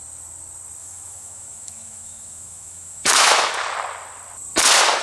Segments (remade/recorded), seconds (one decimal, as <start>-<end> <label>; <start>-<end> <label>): 0.0-0.8 recorded; 0.8-3.5 remade; 3.5-5.0 recorded